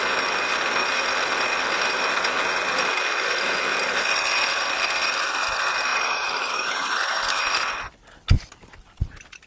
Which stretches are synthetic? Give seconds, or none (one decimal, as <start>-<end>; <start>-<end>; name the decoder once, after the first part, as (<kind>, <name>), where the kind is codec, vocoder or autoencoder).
5.9-7.4 (vocoder, BigVGAN v2)